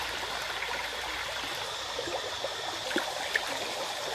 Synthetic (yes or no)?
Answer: no